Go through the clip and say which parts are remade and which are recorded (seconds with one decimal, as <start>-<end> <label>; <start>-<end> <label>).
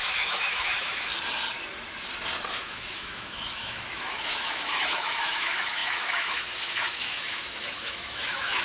0.0-1.1 remade; 1.1-2.5 recorded; 2.5-8.6 remade